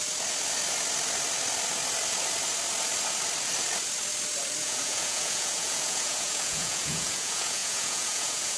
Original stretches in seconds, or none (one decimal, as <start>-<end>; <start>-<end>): 0.0-4.6